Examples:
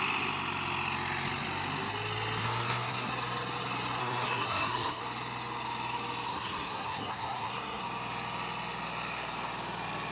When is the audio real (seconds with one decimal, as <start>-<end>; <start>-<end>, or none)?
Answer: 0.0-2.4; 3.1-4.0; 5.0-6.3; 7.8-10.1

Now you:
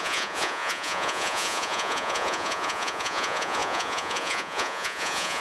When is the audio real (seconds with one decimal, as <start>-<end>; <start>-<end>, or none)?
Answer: none

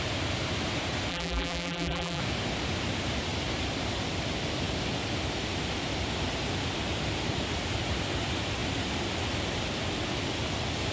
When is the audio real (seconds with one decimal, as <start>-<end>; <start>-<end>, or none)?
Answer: 0.0-1.1; 2.2-10.9

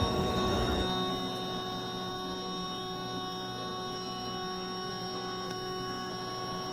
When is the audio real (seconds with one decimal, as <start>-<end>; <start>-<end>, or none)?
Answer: 1.1-2.1; 6.1-6.7

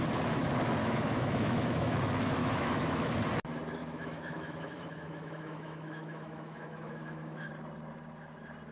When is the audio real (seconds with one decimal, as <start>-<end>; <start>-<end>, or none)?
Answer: 0.0-0.8; 2.0-2.4; 3.1-3.8; 7.5-8.7

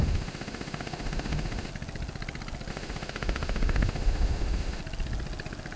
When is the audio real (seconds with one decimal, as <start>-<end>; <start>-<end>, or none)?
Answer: 1.7-2.7; 4.8-5.8

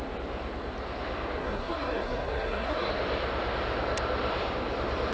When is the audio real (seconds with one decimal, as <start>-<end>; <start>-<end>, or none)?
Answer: 0.0-1.4; 2.9-5.1